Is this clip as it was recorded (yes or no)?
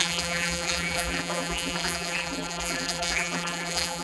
no